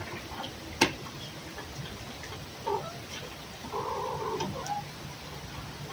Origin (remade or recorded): recorded